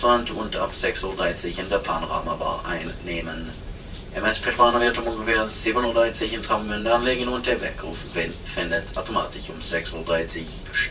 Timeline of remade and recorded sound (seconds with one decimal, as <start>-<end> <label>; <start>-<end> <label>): 0.0-1.1 recorded; 1.1-2.1 remade; 2.1-3.7 recorded; 3.7-9.0 remade; 9.0-10.9 recorded